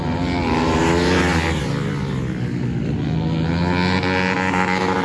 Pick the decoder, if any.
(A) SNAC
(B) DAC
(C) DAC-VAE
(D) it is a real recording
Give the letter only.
D